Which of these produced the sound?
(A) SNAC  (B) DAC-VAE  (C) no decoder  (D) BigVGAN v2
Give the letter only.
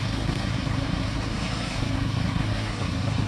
A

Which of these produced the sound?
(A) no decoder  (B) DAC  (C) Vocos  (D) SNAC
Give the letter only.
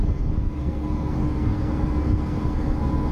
D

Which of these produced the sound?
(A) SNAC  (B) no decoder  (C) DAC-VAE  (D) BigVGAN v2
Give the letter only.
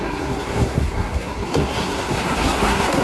A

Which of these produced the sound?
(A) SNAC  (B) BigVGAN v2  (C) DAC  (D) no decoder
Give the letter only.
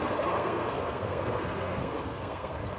A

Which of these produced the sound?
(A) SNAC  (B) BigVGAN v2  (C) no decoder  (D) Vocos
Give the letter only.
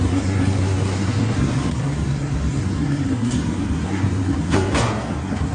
A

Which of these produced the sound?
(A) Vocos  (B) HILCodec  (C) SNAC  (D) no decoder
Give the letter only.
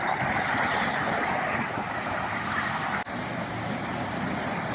D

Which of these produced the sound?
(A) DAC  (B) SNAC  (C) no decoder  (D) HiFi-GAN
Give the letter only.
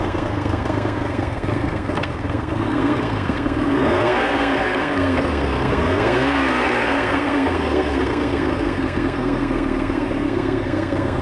B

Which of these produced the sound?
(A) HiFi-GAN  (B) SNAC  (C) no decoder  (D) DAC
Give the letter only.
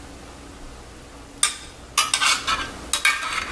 C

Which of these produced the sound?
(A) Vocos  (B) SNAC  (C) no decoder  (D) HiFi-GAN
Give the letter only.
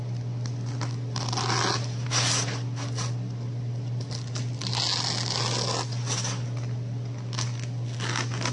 C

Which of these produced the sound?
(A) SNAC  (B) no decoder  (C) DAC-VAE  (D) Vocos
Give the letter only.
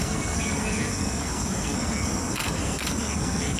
A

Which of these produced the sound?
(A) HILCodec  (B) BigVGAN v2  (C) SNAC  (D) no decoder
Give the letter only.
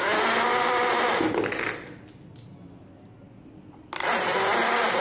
D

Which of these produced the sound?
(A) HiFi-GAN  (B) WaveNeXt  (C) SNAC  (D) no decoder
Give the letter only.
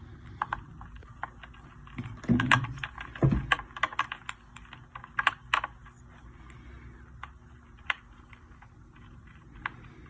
D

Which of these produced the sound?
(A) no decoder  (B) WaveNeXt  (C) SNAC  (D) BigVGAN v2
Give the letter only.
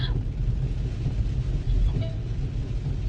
A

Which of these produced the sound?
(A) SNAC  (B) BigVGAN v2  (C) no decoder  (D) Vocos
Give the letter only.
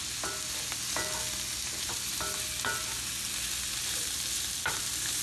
C